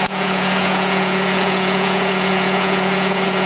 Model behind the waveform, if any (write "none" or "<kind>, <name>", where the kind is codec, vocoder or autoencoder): vocoder, Vocos